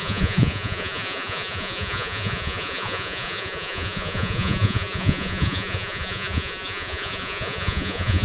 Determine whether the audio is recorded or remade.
remade